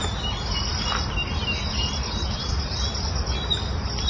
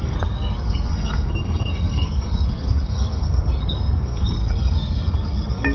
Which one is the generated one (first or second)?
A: second